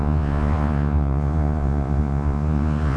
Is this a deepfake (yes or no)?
yes